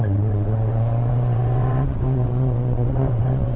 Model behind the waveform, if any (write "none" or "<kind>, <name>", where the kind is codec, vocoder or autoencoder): vocoder, WaveNeXt